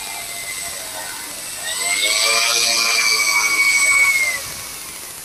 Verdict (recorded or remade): recorded